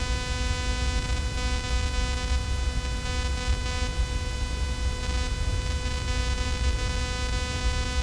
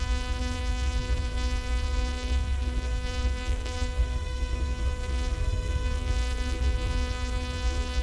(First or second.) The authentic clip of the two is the first